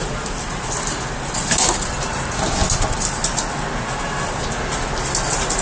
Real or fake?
real